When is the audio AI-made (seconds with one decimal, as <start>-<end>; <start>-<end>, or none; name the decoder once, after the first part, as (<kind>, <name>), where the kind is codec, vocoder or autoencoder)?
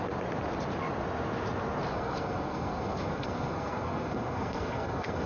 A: 1.9-5.3 (codec, SNAC)